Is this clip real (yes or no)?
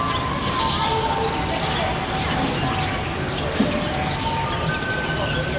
yes